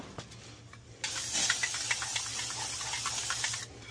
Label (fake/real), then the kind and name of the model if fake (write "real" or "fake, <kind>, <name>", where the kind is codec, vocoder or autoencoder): real